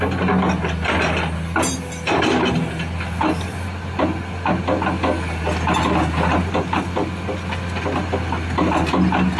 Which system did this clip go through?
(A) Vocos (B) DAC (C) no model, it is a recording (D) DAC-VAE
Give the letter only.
C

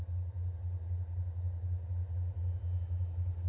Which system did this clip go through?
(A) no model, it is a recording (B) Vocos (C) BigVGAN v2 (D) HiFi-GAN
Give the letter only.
A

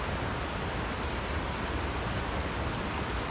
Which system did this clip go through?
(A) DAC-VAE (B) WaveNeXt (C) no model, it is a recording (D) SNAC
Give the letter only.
C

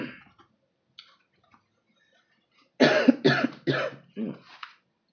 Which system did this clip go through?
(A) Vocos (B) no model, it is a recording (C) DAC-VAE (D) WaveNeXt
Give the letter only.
B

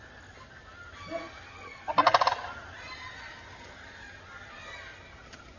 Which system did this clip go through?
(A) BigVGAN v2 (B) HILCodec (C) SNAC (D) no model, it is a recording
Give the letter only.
D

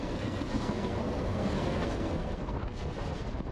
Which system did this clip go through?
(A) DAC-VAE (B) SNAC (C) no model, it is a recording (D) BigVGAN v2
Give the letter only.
B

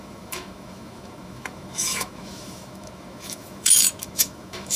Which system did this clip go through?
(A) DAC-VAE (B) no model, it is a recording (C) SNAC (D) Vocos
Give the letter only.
A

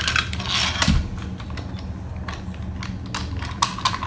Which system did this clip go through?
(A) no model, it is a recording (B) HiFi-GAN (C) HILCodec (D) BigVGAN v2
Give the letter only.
A